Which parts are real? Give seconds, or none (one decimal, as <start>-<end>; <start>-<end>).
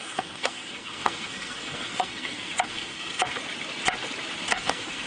3.4-4.5